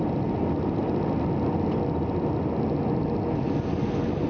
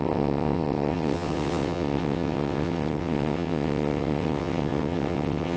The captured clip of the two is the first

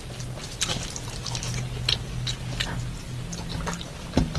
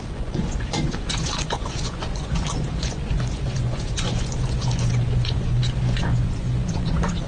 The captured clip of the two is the first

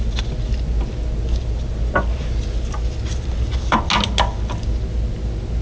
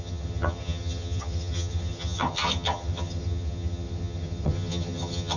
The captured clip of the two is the first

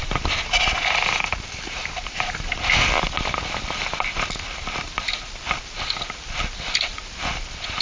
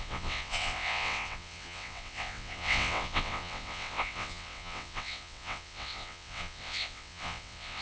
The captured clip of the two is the first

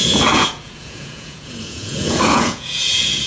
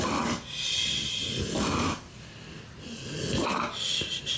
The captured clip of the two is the second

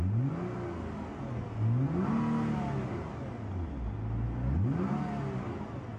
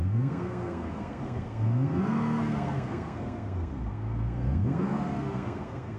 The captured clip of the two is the first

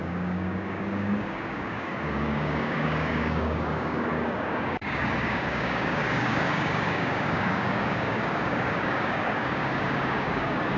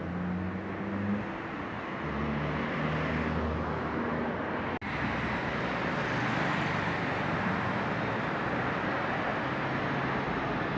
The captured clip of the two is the second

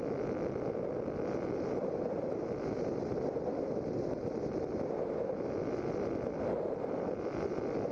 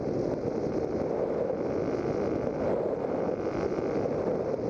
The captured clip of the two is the second